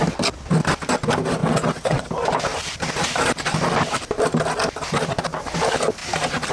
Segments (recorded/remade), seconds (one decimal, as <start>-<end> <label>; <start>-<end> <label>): 0.0-1.4 recorded; 1.4-2.1 remade; 2.1-6.5 recorded

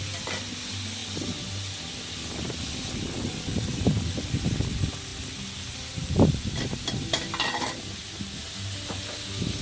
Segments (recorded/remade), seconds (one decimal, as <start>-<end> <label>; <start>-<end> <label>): 0.0-9.6 recorded

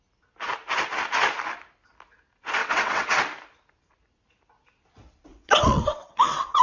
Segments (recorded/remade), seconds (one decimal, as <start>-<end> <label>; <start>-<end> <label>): 0.0-2.6 recorded; 2.6-3.2 remade; 3.2-5.3 recorded; 5.3-6.6 remade

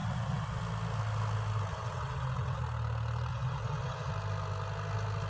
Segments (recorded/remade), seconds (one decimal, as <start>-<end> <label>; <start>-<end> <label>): 0.0-0.6 remade; 0.6-1.7 recorded; 1.7-2.6 remade; 2.6-3.3 recorded; 3.3-4.1 remade; 4.1-5.3 recorded

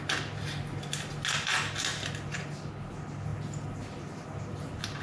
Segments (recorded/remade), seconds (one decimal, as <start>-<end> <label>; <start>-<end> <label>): 0.0-5.0 recorded